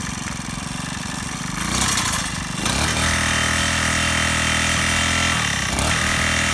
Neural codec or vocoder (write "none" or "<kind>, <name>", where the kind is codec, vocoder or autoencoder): none